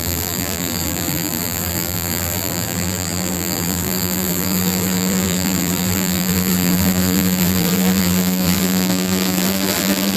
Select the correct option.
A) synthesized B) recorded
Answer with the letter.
A